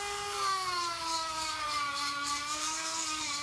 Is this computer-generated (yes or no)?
yes